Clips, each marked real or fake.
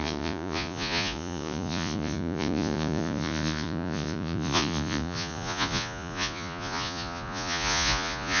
fake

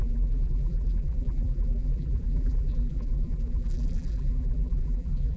fake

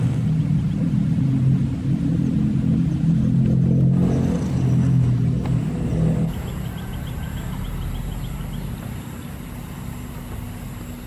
real